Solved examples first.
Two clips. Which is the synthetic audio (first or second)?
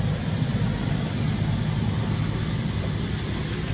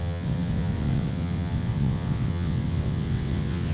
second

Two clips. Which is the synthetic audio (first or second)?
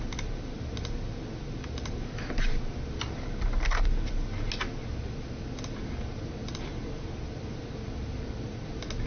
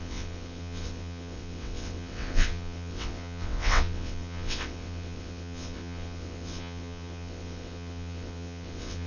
second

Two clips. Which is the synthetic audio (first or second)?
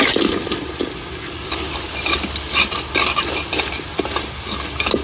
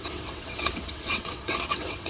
second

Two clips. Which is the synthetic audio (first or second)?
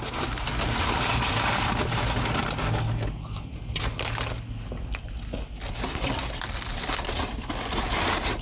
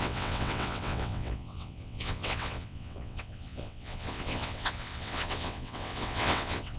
second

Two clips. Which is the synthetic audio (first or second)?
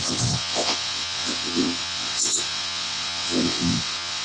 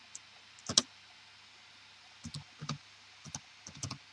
first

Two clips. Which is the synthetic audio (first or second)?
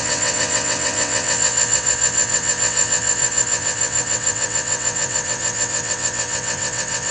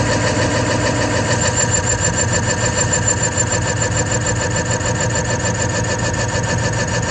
first